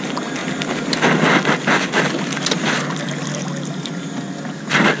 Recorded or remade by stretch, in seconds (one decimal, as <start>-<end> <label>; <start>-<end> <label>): 0.0-5.0 recorded